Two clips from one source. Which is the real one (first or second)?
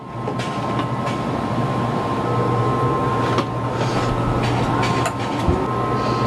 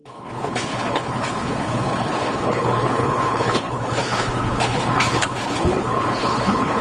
first